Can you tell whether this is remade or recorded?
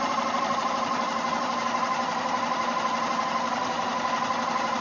remade